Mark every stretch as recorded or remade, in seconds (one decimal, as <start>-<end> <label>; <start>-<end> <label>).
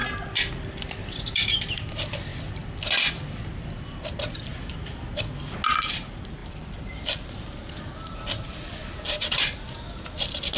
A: 0.0-6.4 recorded; 6.4-7.7 remade; 7.7-10.6 recorded